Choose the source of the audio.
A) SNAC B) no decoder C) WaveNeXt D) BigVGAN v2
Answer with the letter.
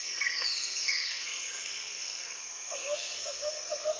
A